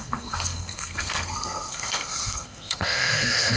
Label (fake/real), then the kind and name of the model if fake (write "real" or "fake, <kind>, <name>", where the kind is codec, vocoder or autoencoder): fake, codec, SNAC